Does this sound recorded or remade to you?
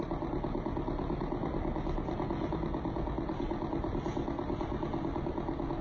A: recorded